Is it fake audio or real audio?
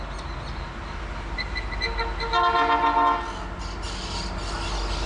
real